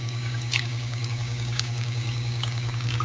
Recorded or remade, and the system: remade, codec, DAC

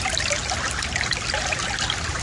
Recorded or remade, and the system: recorded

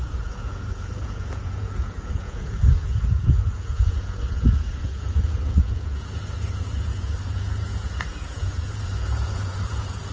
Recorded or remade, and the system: remade, vocoder, Vocos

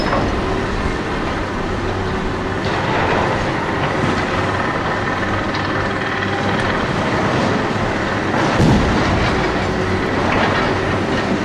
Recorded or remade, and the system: recorded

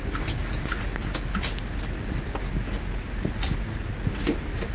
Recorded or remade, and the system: recorded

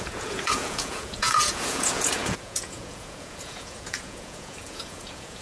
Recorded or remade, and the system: remade, vocoder, Vocos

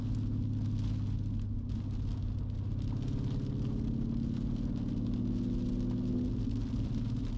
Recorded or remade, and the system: recorded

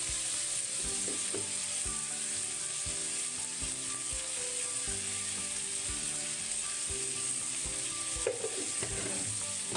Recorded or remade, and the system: recorded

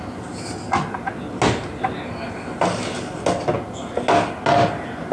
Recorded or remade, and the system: recorded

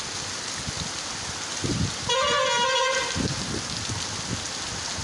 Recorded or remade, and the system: recorded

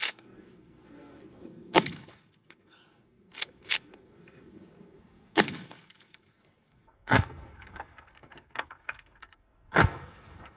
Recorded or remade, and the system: remade, codec, SNAC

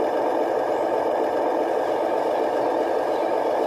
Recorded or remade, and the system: recorded